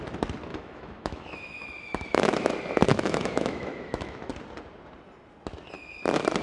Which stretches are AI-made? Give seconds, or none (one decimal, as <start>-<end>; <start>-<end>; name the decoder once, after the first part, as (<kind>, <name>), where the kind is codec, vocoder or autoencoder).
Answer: 0.5-2.5 (autoencoder, DAC-VAE); 2.9-4.3